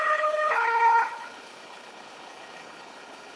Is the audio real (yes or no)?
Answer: no